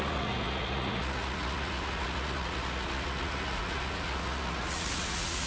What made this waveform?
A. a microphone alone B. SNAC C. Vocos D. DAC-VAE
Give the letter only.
C